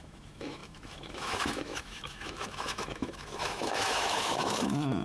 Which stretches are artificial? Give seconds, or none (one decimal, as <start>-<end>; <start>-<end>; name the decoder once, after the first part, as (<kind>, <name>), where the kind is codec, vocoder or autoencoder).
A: 0.0-5.0 (autoencoder, DAC-VAE)

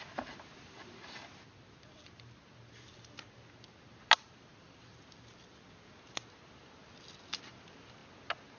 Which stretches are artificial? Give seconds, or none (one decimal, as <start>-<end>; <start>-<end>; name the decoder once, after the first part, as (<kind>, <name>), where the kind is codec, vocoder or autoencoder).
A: none

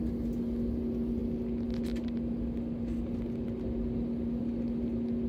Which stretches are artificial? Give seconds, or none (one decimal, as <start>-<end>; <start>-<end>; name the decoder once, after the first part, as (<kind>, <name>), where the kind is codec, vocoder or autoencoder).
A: none

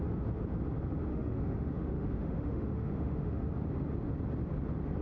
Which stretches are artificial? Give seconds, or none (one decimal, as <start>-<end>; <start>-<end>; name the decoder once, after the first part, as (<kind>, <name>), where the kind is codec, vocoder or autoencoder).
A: 1.1-3.5 (autoencoder, DAC-VAE)

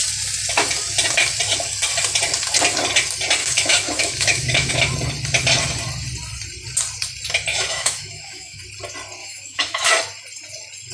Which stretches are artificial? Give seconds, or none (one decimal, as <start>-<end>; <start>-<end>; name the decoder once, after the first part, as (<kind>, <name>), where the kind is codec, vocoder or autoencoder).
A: 3.4-4.7 (autoencoder, DAC-VAE); 7.5-8.6; 9.2-9.9

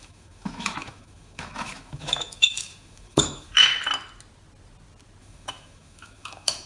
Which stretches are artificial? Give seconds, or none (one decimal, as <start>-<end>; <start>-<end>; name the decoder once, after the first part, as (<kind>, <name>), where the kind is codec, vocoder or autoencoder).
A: 0.0-3.7 (autoencoder, DAC-VAE); 5.2-6.7

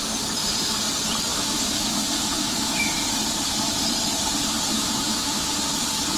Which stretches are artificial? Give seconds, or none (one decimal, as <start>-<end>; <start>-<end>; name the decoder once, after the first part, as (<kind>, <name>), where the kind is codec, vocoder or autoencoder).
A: 1.3-3.0 (autoencoder, DAC-VAE); 4.7-5.5

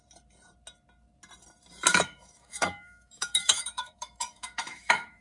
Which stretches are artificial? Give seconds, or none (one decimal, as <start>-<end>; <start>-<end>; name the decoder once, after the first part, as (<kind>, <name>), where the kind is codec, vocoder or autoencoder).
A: 1.9-5.2 (autoencoder, DAC-VAE)